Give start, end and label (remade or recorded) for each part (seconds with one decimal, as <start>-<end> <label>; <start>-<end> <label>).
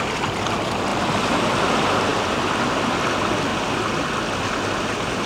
0.0-5.3 recorded